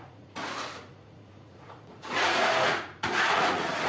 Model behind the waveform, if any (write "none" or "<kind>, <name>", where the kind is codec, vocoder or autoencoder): vocoder, Vocos